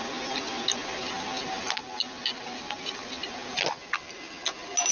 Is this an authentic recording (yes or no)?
yes